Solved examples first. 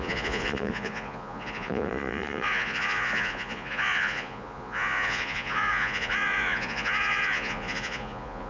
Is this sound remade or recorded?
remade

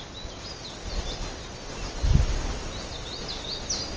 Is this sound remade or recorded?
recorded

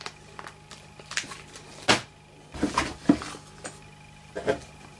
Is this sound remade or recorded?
recorded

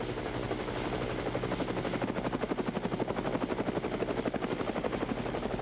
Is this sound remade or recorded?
recorded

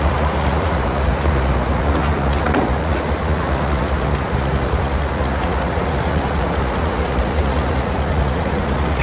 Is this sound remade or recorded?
remade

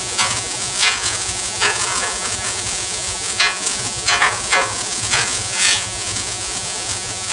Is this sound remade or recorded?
remade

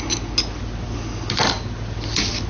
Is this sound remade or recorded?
recorded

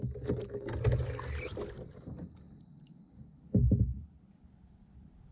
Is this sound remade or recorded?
recorded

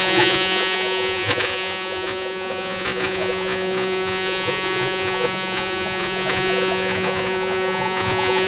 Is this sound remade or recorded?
remade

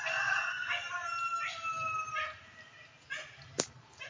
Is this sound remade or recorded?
recorded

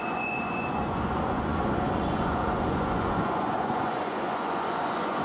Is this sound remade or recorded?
remade